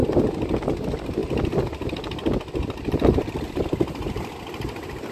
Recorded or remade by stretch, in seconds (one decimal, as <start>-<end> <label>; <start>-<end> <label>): 0.0-5.1 recorded

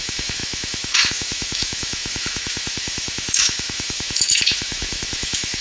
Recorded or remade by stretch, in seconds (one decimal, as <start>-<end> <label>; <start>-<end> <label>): 0.0-5.6 remade